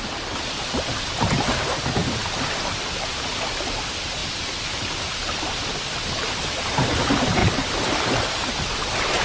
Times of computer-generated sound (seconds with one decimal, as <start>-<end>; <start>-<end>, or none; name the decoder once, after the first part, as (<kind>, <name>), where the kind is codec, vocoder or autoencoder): 0.0-4.2 (vocoder, BigVGAN v2); 5.1-9.2